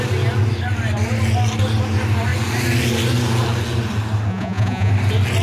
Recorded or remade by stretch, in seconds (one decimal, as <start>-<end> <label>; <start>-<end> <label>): 0.0-4.3 recorded; 4.3-4.9 remade; 4.9-5.4 recorded